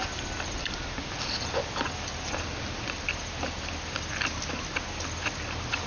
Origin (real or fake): real